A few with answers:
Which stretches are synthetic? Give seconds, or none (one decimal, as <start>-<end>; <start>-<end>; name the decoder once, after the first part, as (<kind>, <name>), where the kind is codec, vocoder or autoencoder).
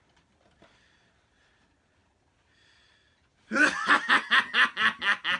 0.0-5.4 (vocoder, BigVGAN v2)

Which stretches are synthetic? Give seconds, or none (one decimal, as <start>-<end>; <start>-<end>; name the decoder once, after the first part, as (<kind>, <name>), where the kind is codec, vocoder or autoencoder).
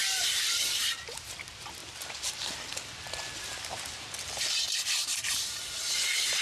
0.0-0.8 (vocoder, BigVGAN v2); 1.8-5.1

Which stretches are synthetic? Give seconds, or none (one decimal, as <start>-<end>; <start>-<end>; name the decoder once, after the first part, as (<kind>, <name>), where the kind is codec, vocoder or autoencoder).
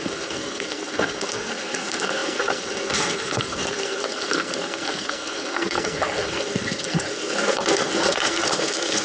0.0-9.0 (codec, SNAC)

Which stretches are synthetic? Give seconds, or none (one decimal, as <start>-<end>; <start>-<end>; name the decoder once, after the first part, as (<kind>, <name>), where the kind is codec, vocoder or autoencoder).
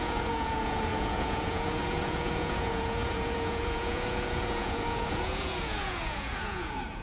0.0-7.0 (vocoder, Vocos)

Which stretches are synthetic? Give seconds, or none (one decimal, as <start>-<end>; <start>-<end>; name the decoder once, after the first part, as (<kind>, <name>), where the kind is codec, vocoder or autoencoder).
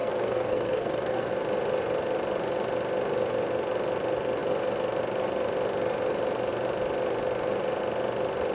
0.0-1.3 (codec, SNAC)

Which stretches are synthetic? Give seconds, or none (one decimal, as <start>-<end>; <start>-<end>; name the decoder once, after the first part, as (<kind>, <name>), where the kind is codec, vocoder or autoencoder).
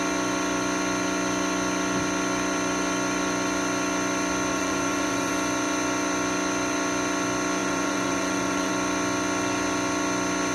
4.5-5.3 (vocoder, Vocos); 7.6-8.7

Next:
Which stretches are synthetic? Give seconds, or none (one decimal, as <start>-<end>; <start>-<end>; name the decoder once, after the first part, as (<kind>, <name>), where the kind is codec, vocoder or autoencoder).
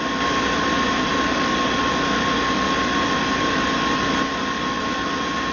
none